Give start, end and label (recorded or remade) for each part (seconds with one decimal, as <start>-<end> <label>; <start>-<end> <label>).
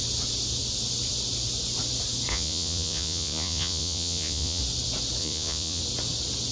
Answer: 0.0-2.3 recorded; 2.3-4.6 remade; 4.6-5.2 recorded; 5.2-5.8 remade; 5.8-6.5 recorded